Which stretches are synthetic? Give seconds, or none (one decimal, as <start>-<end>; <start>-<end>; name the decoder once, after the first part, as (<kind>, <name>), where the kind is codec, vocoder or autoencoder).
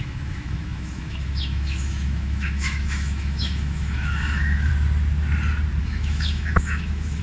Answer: 0.0-4.7 (autoencoder, DAC-VAE); 5.8-7.2